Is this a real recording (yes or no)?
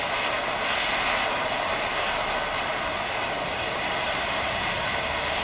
yes